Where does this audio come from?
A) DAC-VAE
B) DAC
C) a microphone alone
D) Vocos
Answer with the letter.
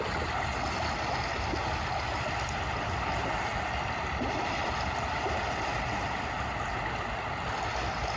C